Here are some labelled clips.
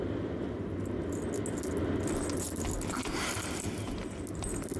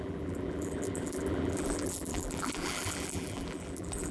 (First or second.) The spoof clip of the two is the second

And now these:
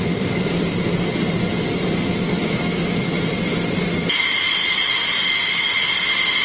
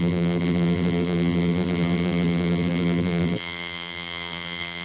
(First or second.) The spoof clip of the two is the second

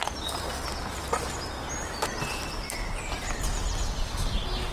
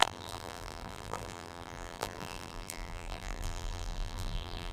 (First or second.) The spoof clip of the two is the second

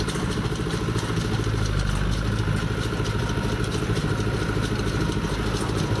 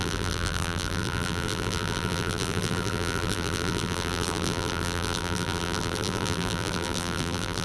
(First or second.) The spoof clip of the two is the second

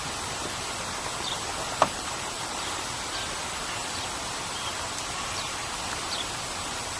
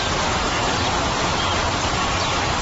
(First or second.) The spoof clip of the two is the first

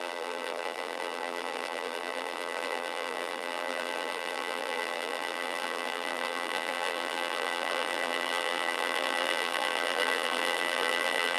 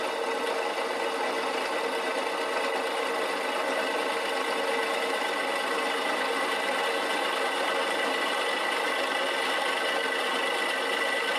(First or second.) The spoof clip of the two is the first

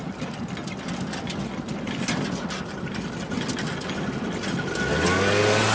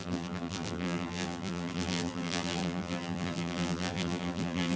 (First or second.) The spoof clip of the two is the second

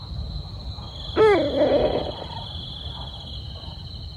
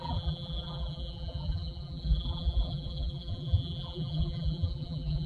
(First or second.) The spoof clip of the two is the second